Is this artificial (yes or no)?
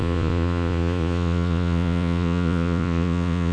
yes